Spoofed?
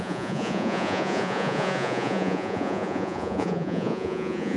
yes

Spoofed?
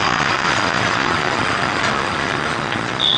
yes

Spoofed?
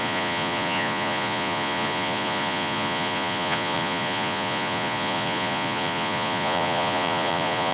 yes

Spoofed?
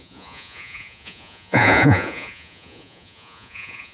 yes